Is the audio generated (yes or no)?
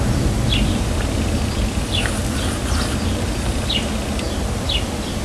no